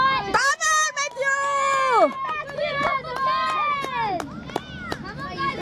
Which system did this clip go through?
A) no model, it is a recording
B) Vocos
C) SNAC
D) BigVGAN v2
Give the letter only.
A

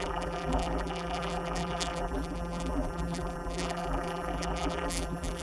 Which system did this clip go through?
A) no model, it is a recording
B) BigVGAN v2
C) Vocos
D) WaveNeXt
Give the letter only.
B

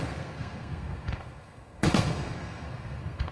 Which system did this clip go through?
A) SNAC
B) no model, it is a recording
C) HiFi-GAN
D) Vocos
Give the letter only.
A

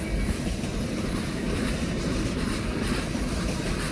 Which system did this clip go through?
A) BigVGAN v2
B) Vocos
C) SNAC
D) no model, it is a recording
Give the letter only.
A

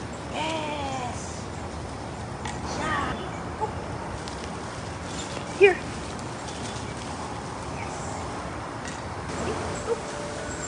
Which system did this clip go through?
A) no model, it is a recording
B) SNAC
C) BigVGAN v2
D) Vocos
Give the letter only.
A